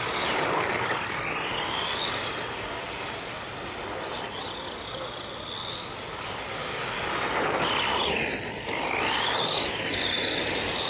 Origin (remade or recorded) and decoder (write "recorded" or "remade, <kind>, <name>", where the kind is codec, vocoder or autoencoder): recorded